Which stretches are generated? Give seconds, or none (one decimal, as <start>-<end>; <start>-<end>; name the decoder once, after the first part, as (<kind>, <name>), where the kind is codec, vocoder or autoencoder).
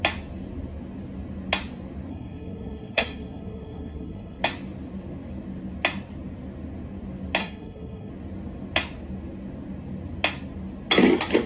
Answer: 2.1-4.4 (codec, SNAC); 7.4-8.1